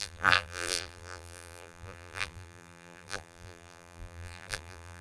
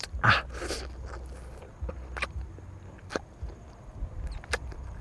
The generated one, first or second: first